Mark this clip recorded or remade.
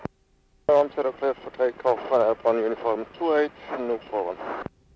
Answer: recorded